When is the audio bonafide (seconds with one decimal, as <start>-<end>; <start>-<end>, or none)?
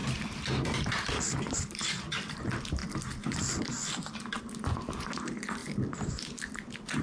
0.0-7.0